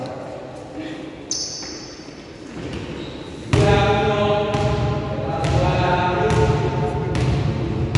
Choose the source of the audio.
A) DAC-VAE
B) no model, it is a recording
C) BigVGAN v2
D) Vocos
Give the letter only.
B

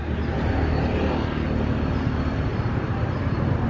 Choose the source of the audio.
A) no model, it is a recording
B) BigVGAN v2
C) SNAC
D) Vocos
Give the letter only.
A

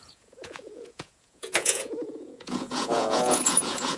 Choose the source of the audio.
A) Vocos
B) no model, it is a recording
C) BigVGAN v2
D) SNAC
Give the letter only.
A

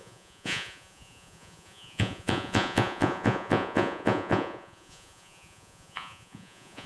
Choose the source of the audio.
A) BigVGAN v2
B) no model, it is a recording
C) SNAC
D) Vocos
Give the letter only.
D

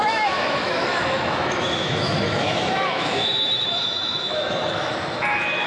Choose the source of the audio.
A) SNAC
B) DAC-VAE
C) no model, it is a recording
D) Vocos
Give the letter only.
B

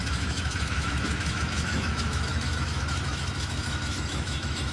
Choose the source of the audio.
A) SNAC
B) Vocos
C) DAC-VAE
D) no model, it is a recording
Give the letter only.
C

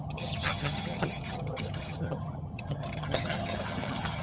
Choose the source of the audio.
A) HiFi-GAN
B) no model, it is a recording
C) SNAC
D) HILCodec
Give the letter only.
A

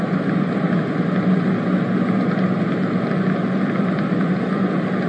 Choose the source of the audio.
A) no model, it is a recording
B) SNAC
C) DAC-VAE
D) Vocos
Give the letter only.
A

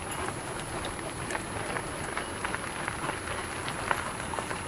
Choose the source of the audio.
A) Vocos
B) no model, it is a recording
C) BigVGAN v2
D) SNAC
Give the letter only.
B